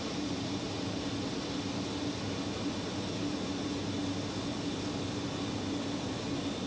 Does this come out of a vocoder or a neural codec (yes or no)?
no